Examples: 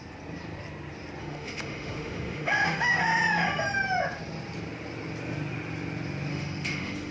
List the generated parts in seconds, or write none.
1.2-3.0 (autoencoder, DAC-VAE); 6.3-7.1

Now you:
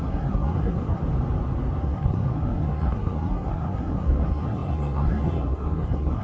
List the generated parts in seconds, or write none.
0.0-1.0 (codec, SNAC); 1.8-6.2

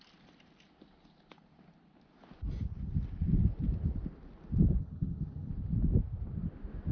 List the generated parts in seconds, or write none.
4.8-5.5 (vocoder, HiFi-GAN)